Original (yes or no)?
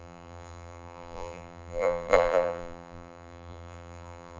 no